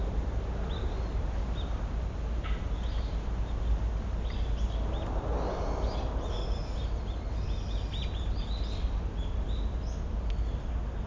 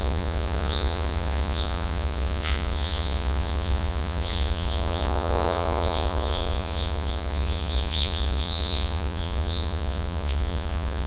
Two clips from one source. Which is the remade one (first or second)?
second